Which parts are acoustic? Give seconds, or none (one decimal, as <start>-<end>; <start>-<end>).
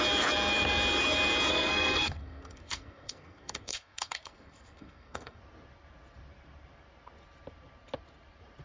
0.0-1.5; 5.4-8.6